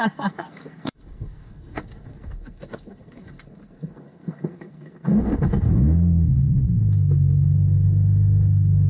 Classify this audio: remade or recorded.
remade